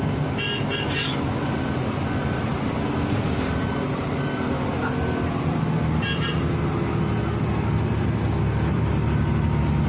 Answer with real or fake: real